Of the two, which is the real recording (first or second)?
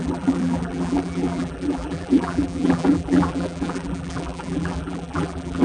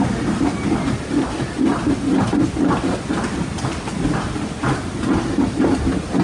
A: second